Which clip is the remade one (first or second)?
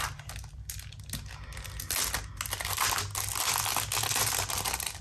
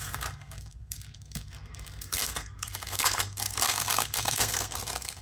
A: second